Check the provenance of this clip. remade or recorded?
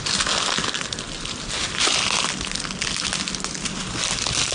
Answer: recorded